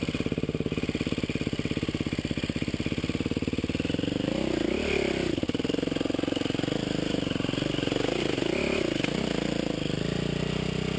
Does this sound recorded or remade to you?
recorded